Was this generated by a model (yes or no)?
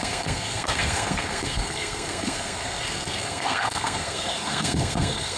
yes